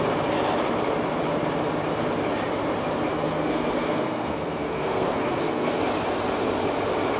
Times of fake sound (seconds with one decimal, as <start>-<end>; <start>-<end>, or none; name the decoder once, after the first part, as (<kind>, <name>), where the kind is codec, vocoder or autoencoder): 3.1-5.8 (codec, SNAC)